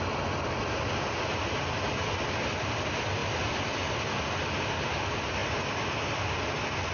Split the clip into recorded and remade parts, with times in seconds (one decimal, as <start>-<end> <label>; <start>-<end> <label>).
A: 0.0-6.9 recorded